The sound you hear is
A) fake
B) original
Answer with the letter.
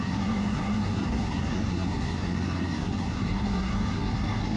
A